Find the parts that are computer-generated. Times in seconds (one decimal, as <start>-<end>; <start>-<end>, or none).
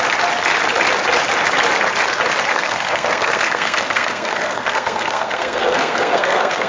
2.5-6.7